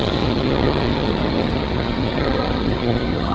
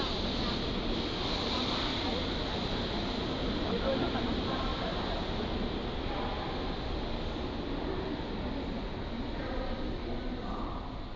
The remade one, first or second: first